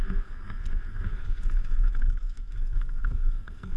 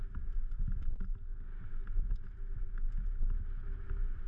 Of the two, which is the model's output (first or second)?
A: first